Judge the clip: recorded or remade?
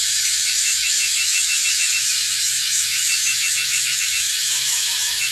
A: remade